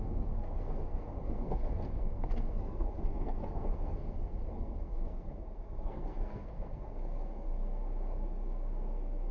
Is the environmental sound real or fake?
fake